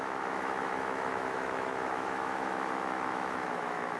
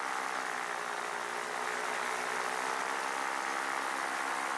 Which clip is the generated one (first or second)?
first